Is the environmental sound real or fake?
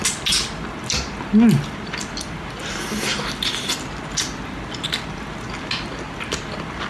real